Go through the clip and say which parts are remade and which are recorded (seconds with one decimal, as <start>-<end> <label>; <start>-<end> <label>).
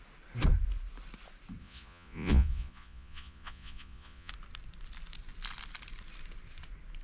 0.0-1.6 recorded; 1.6-4.3 remade; 4.3-7.0 recorded